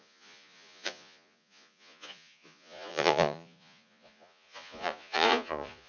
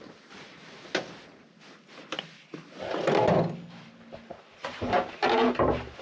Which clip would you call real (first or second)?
second